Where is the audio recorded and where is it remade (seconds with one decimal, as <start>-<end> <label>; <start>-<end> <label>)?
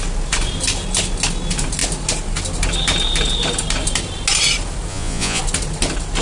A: 0.0-4.9 recorded; 4.9-5.4 remade; 5.4-6.2 recorded